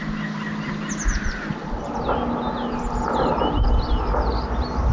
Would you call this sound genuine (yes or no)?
yes